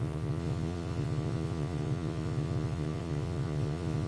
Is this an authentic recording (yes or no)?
no